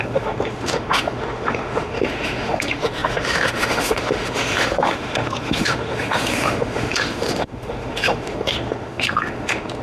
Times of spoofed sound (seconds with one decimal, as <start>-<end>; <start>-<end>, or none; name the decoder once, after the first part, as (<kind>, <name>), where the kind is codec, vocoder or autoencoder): 0.0-9.8 (autoencoder, DAC-VAE)